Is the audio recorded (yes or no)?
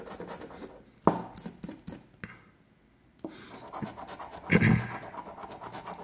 yes